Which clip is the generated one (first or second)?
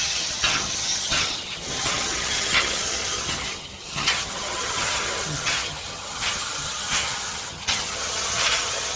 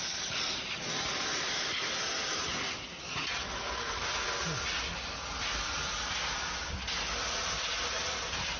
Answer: first